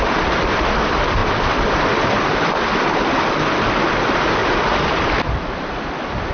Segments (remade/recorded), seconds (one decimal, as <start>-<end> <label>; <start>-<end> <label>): 0.0-6.3 recorded